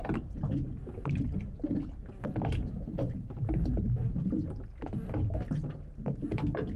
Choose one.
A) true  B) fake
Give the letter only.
A